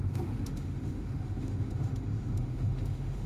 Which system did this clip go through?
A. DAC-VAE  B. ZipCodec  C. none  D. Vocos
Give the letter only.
A